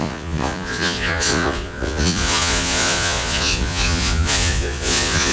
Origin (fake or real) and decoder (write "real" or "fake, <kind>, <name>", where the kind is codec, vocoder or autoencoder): fake, vocoder, Vocos